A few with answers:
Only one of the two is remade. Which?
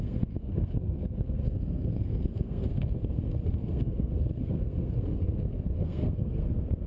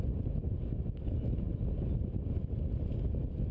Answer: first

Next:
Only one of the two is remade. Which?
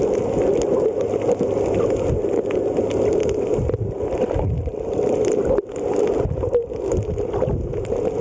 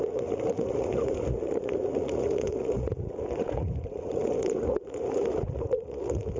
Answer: second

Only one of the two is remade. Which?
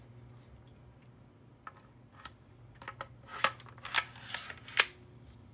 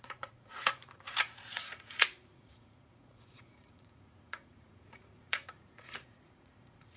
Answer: second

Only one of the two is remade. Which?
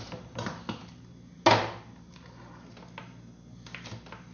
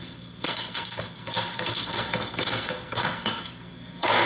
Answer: second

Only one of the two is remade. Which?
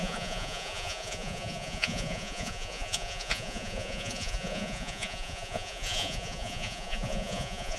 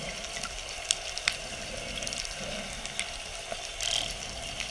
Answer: first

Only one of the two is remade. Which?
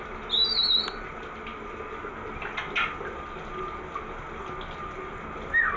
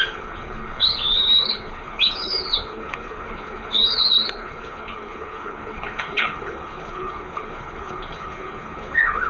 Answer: second